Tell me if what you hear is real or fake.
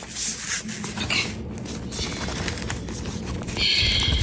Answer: real